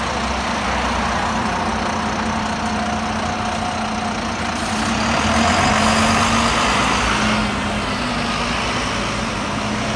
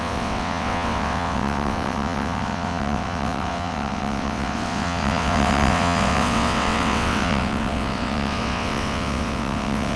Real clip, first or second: first